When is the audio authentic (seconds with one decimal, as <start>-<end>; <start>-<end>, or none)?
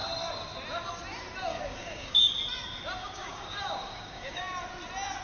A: 0.0-1.5; 2.2-3.0; 4.4-5.2